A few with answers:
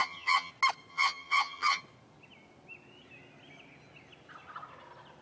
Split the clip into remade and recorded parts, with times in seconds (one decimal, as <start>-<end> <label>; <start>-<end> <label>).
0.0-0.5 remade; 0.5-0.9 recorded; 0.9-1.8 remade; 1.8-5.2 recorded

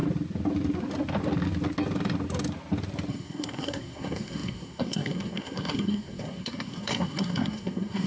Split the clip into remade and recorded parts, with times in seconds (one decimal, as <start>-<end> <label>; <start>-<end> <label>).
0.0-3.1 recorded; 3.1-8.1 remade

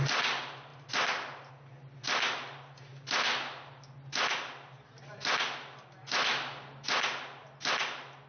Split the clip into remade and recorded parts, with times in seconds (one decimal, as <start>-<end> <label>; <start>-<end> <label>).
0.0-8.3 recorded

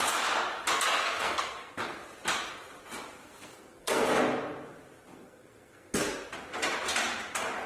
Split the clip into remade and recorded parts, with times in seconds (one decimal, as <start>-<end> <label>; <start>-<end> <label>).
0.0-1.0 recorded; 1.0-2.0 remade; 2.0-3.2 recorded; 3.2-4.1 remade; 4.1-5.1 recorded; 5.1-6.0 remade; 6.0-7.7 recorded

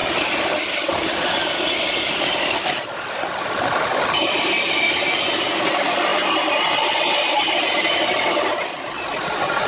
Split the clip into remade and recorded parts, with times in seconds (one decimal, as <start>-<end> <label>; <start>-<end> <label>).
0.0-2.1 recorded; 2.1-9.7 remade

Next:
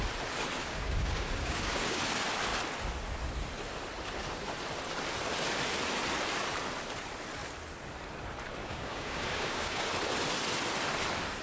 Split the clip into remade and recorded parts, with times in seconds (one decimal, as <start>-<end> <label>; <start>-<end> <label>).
0.0-0.6 recorded; 0.6-2.0 remade; 2.0-8.6 recorded; 8.6-9.9 remade; 9.9-11.4 recorded

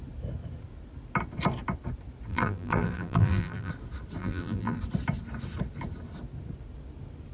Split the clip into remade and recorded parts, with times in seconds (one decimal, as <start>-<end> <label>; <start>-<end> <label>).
0.0-2.3 recorded; 2.3-3.7 remade; 3.7-4.2 recorded; 4.2-4.8 remade; 4.8-7.3 recorded